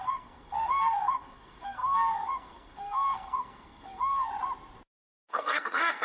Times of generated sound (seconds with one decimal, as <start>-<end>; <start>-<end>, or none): 0.0-4.3; 5.3-6.0